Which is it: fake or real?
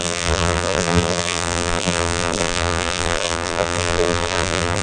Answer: fake